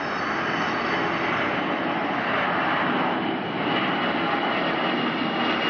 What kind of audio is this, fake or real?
real